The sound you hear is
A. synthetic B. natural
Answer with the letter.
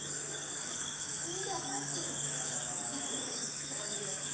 A